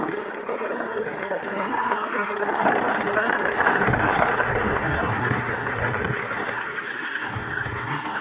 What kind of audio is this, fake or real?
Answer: fake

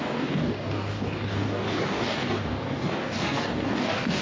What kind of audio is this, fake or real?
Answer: fake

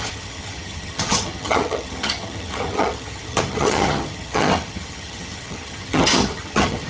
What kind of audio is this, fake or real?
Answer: fake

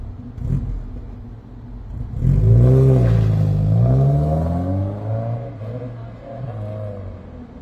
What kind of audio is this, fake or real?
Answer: real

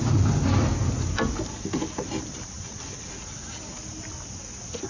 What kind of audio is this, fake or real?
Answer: real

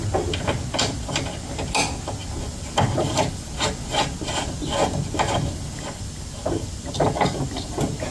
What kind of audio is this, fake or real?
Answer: real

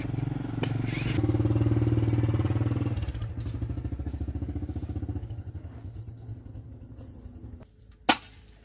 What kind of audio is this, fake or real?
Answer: real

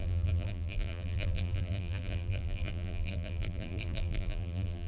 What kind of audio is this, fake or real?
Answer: fake